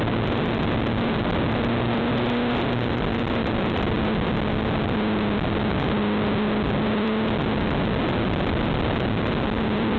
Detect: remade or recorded recorded